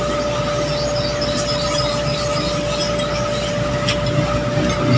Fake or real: real